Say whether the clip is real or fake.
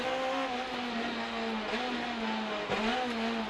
real